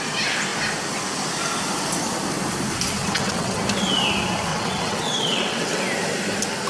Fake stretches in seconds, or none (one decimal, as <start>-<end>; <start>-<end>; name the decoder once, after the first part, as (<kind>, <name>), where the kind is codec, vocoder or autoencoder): 3.0-3.6 (vocoder, WaveNeXt); 4.5-5.8